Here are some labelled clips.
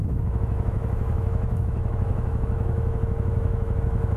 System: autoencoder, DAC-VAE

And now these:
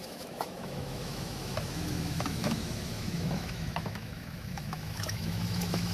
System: autoencoder, DAC-VAE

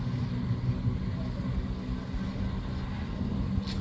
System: none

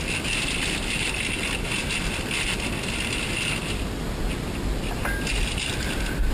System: none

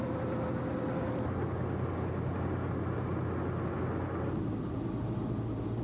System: none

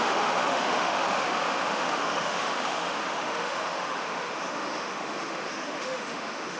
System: autoencoder, DAC-VAE